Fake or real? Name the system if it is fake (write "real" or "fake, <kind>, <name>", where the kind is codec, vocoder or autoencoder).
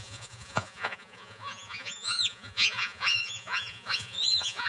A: fake, vocoder, Vocos